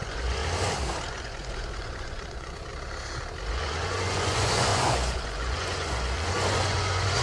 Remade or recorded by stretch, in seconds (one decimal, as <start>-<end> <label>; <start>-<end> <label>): 0.0-0.4 remade; 0.4-1.1 recorded; 1.1-2.7 remade; 2.7-3.5 recorded; 3.5-7.2 remade